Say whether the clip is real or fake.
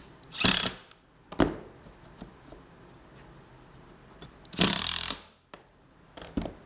real